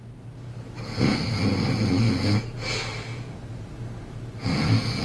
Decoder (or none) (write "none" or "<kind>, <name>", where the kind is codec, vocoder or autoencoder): none